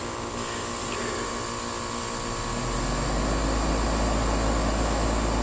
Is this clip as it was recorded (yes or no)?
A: yes